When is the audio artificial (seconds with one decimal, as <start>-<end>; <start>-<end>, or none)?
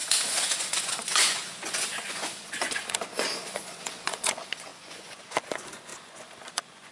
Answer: 0.0-6.9